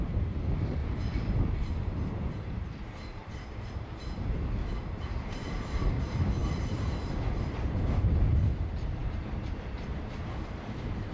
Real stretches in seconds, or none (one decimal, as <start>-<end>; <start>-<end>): 0.8-1.4